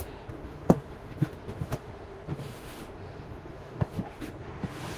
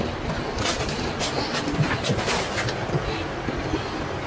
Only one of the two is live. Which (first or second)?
second